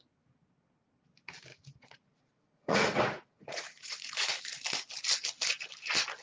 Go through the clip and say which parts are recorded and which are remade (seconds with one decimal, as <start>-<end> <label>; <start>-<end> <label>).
0.0-1.5 recorded; 1.5-4.4 remade; 4.4-6.2 recorded